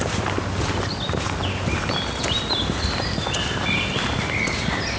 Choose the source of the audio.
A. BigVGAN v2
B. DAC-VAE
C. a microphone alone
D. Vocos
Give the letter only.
C